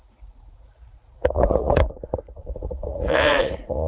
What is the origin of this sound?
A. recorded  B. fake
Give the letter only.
B